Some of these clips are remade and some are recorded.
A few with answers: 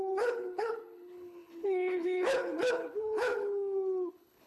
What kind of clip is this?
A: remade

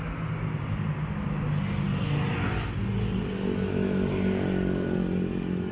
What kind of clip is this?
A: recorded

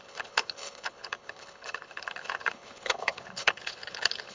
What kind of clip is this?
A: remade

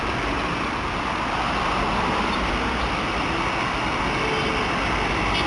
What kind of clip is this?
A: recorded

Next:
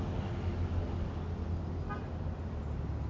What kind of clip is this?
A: recorded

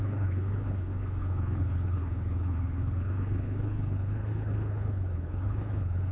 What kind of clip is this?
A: remade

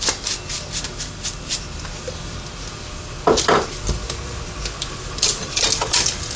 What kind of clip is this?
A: recorded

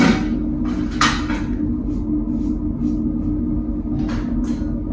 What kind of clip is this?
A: recorded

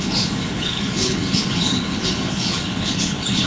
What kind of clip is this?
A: remade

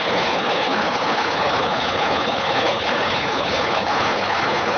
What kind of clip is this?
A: remade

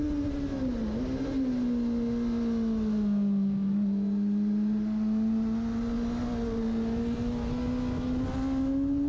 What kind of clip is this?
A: recorded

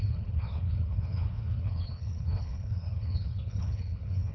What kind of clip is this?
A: remade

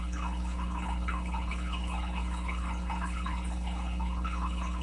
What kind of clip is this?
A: remade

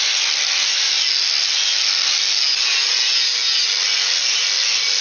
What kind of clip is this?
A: recorded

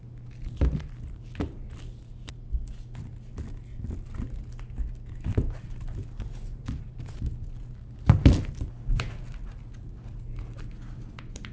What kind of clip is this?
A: recorded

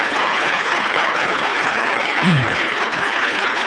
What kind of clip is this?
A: remade